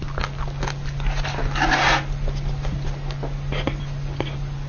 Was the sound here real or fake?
real